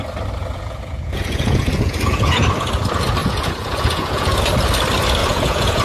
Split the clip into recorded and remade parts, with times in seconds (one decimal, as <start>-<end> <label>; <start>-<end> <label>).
0.0-0.4 recorded; 0.4-2.4 remade; 2.4-3.2 recorded; 3.2-4.4 remade; 4.4-5.2 recorded; 5.2-5.8 remade